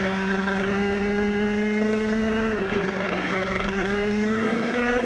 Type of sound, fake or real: fake